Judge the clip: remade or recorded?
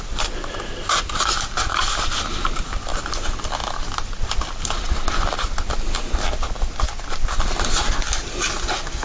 recorded